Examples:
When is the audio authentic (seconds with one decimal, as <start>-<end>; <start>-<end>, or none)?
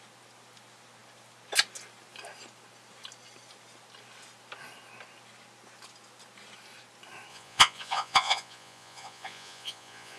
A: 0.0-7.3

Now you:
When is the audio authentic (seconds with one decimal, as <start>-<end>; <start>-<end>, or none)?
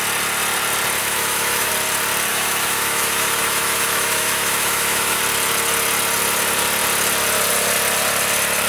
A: 0.0-1.0; 1.7-2.3; 5.2-8.7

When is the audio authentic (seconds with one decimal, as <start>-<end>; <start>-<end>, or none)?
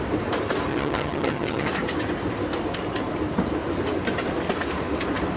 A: 0.0-0.7; 1.7-5.4